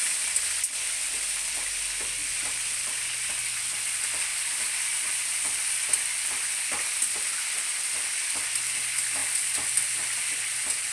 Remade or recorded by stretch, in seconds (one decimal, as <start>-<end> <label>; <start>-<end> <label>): 0.0-2.2 recorded; 2.2-3.3 remade; 3.3-4.3 recorded; 4.3-5.2 remade; 5.2-10.9 recorded